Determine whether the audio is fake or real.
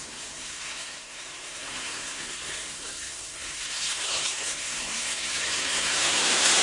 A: fake